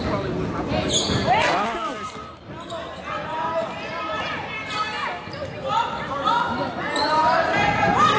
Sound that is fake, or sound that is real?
real